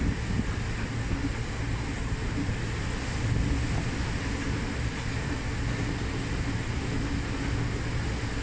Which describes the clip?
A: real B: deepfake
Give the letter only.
A